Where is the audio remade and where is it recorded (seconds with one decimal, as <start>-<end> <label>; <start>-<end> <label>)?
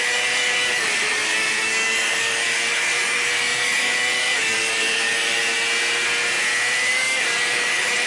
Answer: 0.0-5.4 remade; 5.4-6.9 recorded; 6.9-8.1 remade